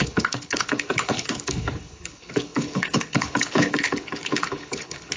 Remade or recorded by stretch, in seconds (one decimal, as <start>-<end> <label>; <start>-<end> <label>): 0.0-5.2 remade